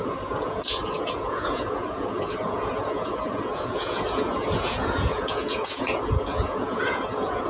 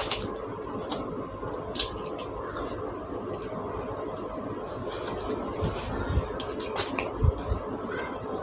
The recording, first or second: second